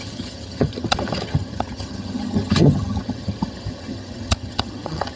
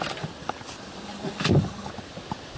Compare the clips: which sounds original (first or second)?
second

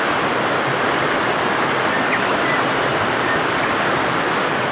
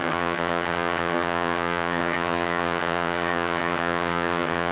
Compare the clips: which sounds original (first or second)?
first